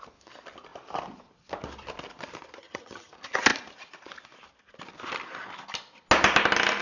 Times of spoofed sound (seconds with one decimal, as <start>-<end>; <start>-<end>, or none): 2.6-3.1